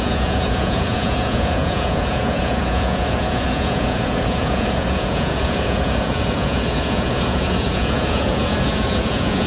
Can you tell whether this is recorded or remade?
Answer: remade